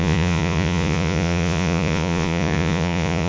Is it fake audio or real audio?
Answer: fake